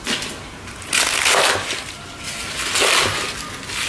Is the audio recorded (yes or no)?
yes